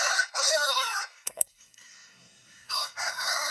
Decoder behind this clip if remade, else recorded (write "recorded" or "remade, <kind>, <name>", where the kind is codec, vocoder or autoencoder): remade, codec, SNAC